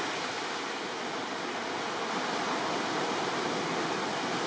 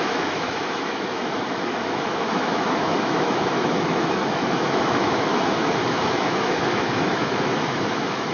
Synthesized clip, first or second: second